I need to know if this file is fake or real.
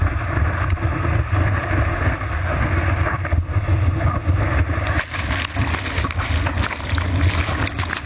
real